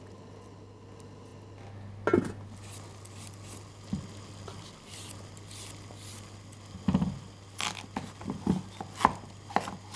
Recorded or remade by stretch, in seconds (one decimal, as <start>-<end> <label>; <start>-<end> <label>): 0.0-10.0 recorded